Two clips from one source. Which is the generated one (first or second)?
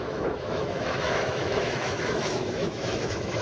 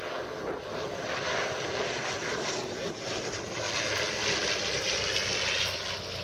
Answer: first